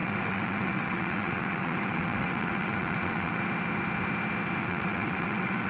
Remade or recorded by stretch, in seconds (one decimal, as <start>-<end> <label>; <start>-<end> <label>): 0.0-3.4 remade; 3.4-4.6 recorded; 4.6-5.7 remade